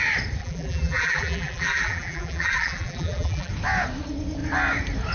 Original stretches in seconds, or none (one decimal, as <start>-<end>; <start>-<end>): 0.0-0.4; 3.5-5.1